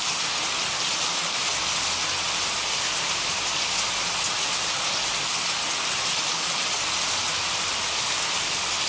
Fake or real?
real